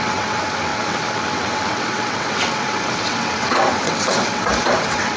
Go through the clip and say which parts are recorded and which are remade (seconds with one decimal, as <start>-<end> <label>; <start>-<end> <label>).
0.0-5.2 remade

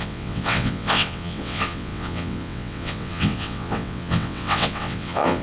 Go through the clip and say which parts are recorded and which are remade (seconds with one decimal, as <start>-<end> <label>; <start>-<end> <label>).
0.0-5.4 remade

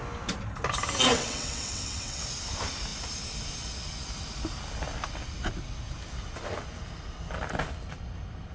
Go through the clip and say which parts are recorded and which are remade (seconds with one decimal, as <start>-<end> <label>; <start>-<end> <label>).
0.0-1.1 recorded; 1.1-2.2 remade; 2.2-8.5 recorded

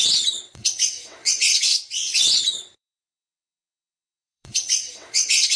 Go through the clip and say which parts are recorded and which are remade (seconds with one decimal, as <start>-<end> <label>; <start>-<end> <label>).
0.0-5.6 remade

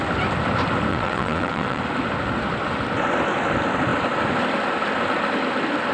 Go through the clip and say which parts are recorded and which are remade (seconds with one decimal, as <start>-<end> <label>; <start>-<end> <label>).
0.0-0.9 recorded; 0.9-1.8 remade; 1.8-5.9 recorded